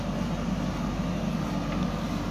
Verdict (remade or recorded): recorded